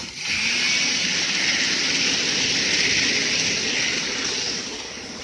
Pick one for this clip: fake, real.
real